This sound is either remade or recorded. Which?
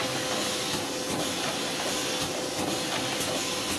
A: recorded